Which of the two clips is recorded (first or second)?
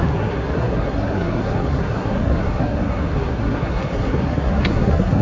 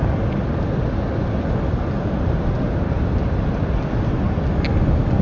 second